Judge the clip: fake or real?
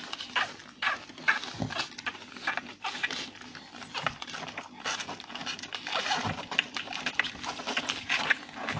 real